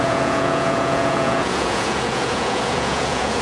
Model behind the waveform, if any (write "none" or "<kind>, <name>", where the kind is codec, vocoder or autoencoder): vocoder, Vocos